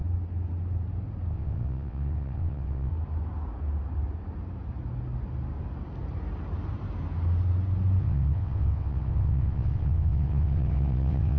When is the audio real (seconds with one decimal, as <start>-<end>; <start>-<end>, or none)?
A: 0.0-1.3; 2.9-8.0